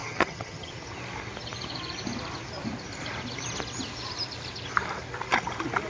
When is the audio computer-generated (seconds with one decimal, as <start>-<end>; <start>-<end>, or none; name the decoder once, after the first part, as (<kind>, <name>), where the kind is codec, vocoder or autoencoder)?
0.0-0.7 (vocoder, HiFi-GAN)